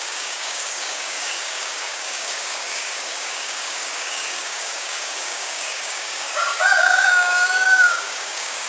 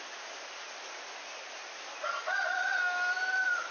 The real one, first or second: second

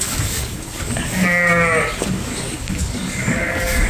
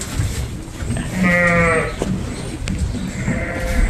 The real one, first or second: second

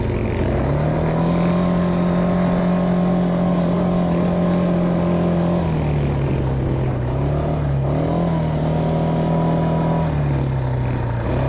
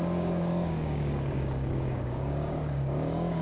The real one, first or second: first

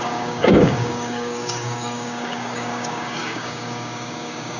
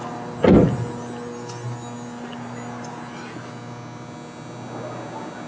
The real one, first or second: second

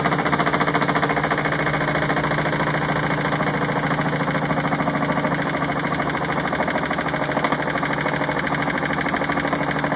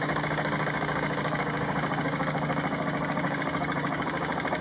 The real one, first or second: first